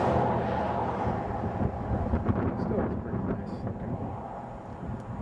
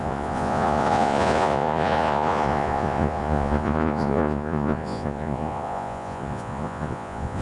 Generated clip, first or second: second